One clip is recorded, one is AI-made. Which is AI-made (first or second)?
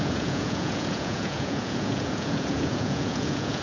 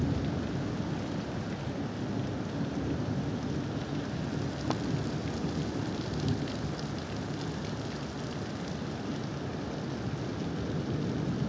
first